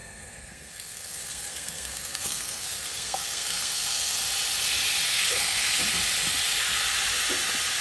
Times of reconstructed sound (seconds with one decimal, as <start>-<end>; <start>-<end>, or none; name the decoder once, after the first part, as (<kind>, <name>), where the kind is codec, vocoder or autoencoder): 0.0-4.2 (codec, SNAC); 5.1-5.8